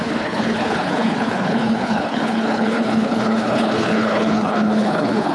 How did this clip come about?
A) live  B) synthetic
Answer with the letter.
B